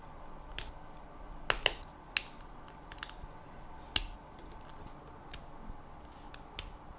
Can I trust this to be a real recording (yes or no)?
yes